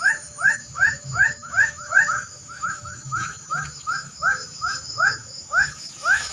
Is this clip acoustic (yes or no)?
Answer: no